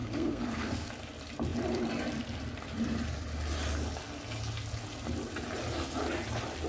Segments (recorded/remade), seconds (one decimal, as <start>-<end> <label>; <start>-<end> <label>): 0.0-0.9 remade; 0.9-6.7 recorded